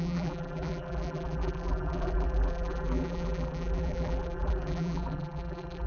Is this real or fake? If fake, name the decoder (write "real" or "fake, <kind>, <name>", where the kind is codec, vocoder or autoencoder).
fake, vocoder, BigVGAN v2